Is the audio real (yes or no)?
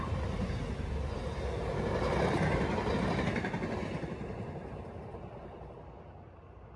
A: yes